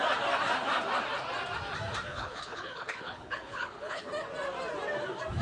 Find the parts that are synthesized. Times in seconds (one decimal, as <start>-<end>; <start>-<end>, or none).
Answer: 2.1-4.1